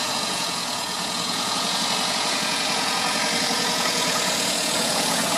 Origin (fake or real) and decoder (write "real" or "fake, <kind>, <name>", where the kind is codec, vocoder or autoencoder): fake, vocoder, Vocos